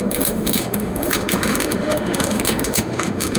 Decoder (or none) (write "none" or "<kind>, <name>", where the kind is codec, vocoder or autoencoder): autoencoder, DAC-VAE